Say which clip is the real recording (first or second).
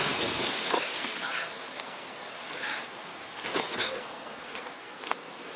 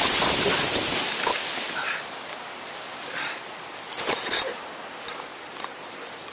second